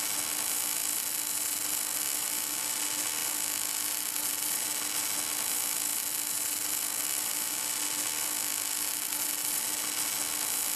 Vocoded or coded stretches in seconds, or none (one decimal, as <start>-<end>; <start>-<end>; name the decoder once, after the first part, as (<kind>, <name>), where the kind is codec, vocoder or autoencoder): none